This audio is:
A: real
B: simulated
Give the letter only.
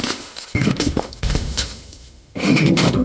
B